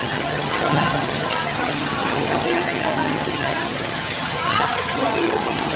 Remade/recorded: remade